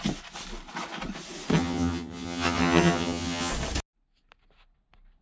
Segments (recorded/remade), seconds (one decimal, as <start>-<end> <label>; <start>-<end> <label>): 0.0-1.5 recorded; 1.5-3.5 remade; 3.5-5.2 recorded